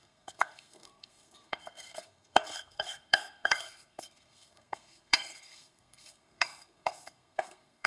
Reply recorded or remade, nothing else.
remade